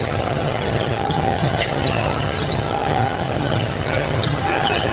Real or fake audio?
fake